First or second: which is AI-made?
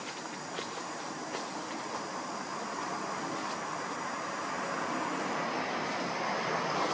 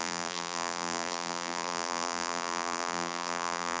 second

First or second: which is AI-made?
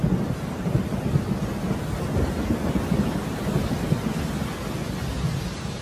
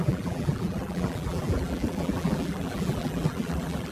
second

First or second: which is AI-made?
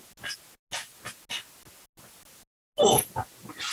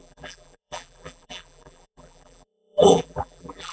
second